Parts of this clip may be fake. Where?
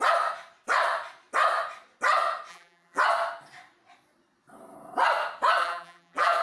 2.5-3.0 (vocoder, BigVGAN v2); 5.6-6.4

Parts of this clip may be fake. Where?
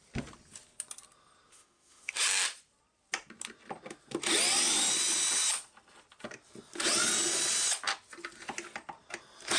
1.5-2.1 (autoencoder, DAC-VAE)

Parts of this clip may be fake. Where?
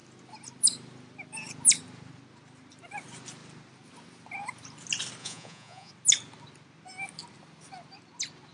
5.2-5.9 (vocoder, Vocos)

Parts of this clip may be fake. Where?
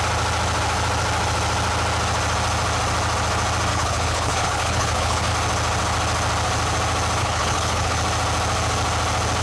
3.7-5.3 (codec, HILCodec); 7.2-8.0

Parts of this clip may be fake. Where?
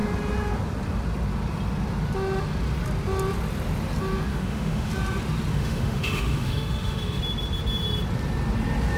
4.3-4.9 (autoencoder, DAC-VAE); 5.5-7.2